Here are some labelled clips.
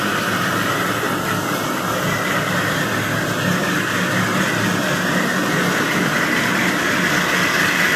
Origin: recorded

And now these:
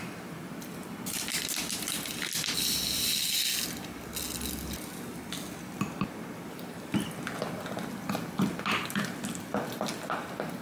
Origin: recorded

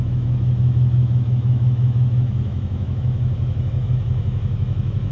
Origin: remade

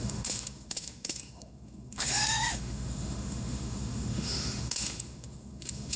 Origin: remade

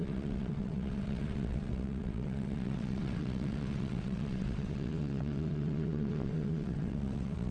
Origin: remade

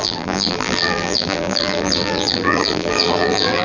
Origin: remade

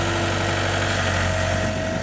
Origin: recorded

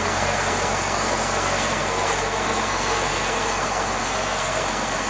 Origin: remade